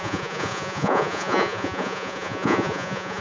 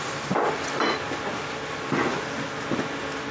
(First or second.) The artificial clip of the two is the first